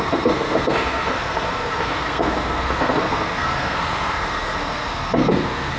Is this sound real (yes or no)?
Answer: no